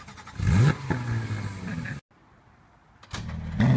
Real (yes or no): yes